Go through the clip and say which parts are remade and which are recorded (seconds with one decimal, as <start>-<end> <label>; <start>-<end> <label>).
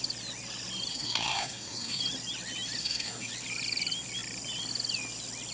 0.0-0.9 recorded; 0.9-2.0 remade; 2.0-2.8 recorded; 2.8-3.3 remade; 3.3-5.5 recorded